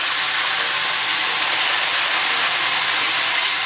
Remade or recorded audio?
recorded